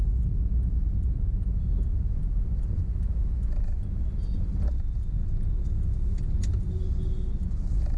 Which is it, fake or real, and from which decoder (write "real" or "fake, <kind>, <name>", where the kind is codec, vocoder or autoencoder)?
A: real